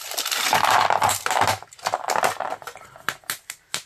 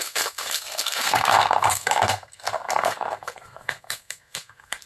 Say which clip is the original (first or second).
first